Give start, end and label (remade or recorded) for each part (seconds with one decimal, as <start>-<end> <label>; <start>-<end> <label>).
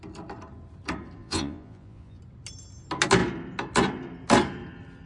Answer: 0.0-1.2 recorded; 1.2-2.2 remade; 2.2-5.1 recorded